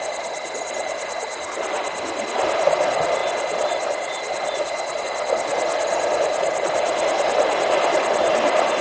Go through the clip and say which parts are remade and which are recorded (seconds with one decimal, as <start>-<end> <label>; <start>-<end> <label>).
0.0-8.8 recorded